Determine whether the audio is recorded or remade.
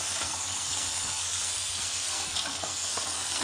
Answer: remade